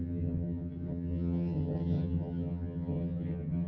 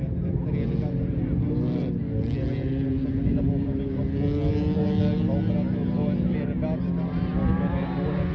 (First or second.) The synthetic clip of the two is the first